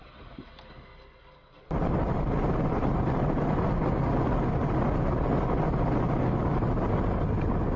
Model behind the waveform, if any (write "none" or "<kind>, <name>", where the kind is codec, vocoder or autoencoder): none